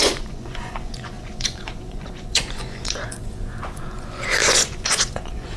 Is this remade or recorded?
remade